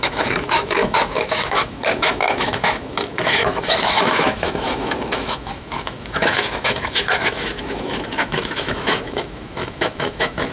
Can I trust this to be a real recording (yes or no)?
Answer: no